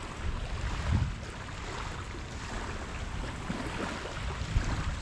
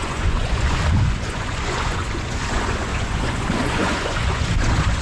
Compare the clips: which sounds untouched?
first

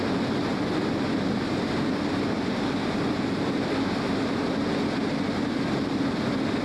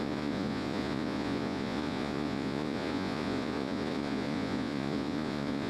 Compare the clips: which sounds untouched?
first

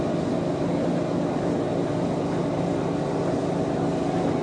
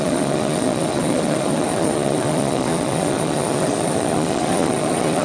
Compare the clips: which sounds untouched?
first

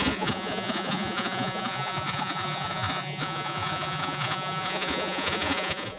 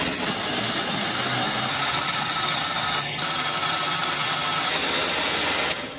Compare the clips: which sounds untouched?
second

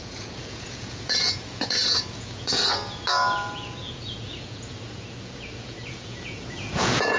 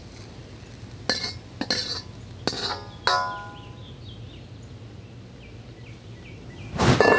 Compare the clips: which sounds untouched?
second